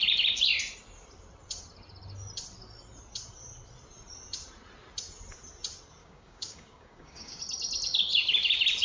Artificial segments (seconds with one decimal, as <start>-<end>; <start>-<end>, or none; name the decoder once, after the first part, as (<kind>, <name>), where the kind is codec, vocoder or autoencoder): 6.0-7.4 (codec, DAC)